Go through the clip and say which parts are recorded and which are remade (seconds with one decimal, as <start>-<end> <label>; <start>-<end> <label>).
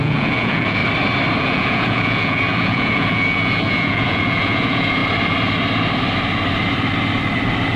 0.0-0.8 remade; 0.8-1.4 recorded; 1.4-5.0 remade; 5.0-7.8 recorded